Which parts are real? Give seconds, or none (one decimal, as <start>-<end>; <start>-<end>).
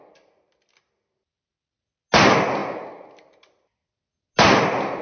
0.0-5.0